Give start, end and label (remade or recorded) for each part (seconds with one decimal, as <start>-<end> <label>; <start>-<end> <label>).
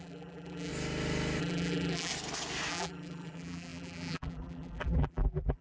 0.0-0.7 remade; 0.7-1.4 recorded; 1.4-2.1 remade; 2.1-2.7 recorded; 2.7-5.6 remade